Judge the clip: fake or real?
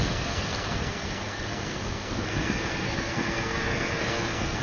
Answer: fake